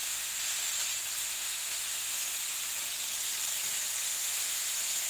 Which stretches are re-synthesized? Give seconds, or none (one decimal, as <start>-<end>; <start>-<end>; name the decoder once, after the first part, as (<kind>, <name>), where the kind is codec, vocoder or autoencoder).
0.0-0.7 (autoencoder, DAC-VAE); 1.2-2.3; 4.1-5.1